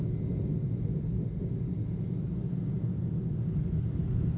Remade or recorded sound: recorded